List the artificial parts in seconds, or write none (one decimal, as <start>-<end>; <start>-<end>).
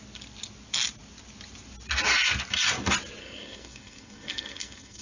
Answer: 3.2-5.0